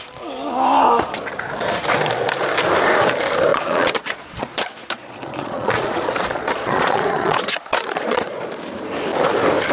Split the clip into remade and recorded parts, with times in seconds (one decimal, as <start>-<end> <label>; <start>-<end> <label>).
0.0-3.5 recorded; 3.5-8.4 remade; 8.4-9.7 recorded